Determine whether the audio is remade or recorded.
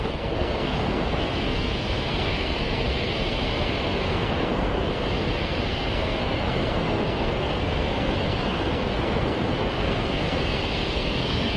remade